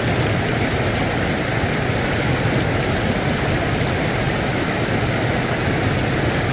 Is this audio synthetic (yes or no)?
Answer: no